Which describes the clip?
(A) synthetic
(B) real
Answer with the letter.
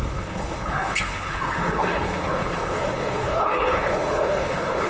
A